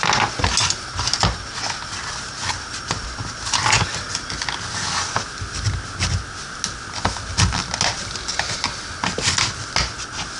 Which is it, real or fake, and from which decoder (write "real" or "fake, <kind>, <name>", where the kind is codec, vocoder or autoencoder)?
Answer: real